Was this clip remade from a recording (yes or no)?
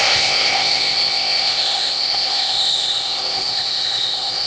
yes